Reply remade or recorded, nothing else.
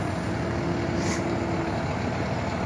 recorded